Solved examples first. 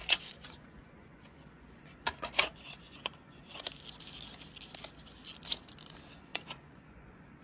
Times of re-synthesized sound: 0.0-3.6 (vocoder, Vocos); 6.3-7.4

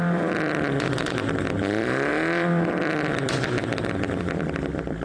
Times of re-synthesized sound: 0.0-5.0 (vocoder, BigVGAN v2)

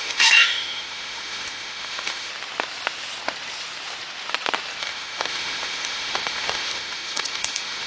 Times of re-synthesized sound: 0.0-2.3 (autoencoder, DAC-VAE); 4.8-7.9

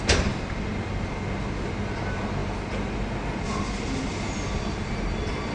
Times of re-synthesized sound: none

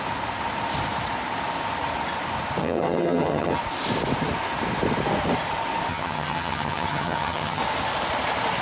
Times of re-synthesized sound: 2.6-3.6 (vocoder, HiFi-GAN); 5.9-7.6

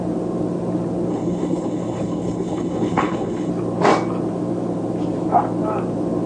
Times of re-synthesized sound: 1.1-3.5 (codec, HILCodec)